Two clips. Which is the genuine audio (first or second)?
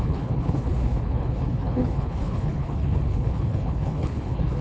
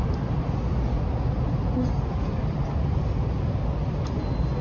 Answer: second